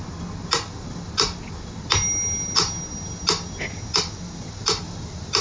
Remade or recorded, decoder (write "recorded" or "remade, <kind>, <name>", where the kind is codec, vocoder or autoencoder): recorded